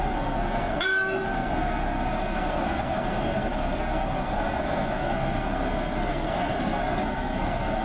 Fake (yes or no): yes